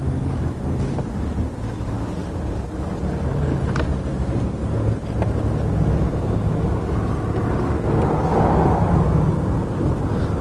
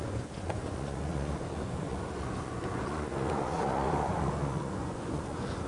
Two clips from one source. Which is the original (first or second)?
first